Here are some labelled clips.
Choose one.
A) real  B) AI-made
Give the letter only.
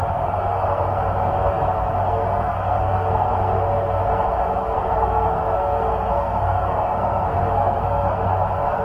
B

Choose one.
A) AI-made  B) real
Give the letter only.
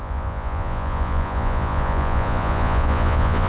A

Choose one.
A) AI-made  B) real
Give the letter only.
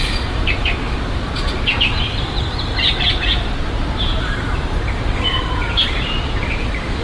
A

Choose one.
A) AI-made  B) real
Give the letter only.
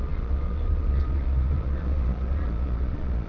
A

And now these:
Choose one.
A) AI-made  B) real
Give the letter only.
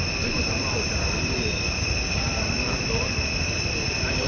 A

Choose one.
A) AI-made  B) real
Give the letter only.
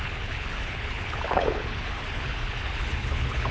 A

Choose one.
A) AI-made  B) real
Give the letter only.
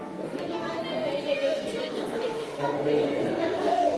A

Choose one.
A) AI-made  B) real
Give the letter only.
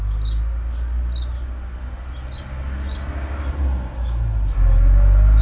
B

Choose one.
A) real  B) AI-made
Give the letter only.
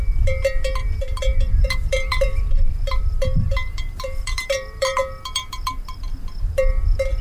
B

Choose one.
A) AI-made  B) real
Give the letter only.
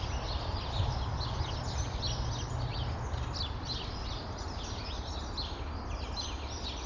B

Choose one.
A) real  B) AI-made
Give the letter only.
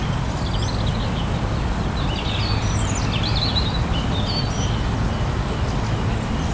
A